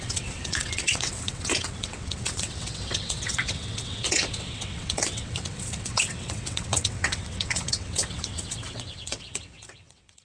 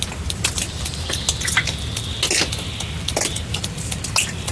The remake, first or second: first